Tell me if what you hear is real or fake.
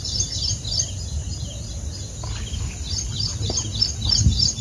real